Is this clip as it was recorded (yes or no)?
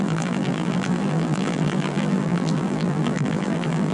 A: no